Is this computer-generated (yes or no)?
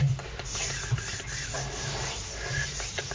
no